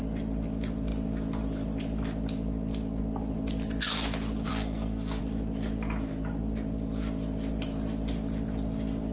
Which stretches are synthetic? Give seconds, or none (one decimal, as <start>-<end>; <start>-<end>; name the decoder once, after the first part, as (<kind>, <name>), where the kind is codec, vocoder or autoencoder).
4.5-5.2 (codec, SNAC)